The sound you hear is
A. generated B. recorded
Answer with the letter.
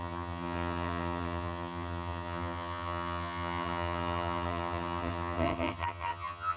A